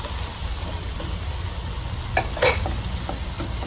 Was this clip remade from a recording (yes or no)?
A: no